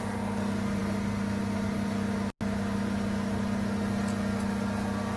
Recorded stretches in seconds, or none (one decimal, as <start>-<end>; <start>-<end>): 0.0-5.2